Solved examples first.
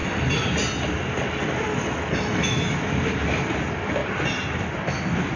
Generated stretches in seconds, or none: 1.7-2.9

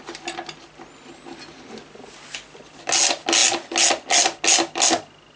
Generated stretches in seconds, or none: none

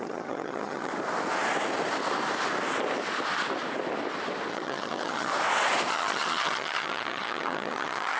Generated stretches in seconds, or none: 0.0-0.9; 4.5-5.3; 5.9-8.2

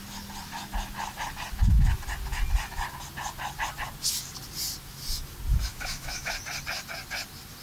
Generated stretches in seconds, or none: 5.7-6.3

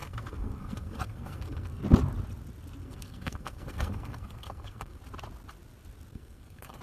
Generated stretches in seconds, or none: 0.0-1.8; 2.8-5.0; 6.1-6.8

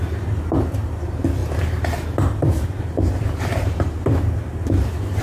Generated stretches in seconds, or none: 1.4-4.5

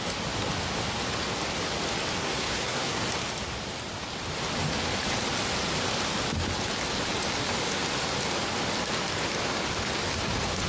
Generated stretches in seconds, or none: 2.2-3.0